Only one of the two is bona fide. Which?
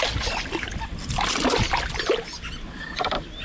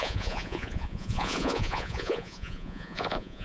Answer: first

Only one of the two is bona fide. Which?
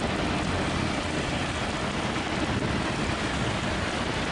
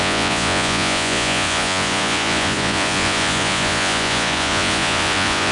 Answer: first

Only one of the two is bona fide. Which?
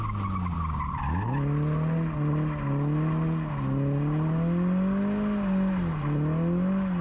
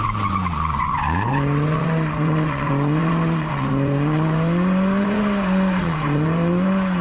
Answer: first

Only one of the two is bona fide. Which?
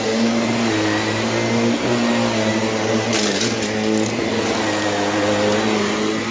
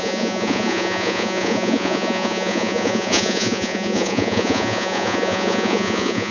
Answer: first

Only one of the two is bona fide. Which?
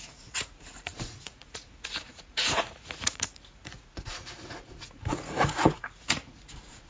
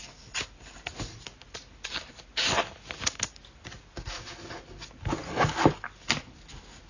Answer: second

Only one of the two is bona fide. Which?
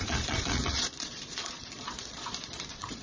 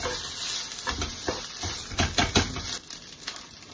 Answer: second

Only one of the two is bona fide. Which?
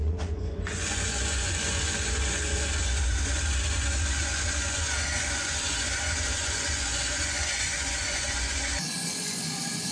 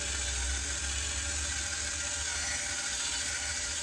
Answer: second